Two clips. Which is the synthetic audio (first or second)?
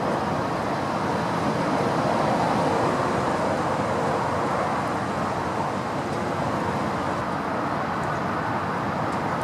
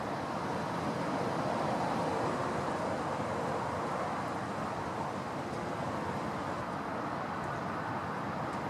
second